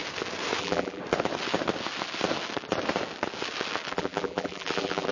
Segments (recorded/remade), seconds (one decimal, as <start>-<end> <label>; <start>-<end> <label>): 0.0-0.6 recorded; 0.6-1.0 remade; 1.0-3.9 recorded; 3.9-5.1 remade